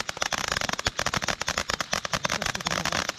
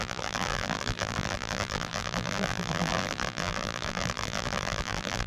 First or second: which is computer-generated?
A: second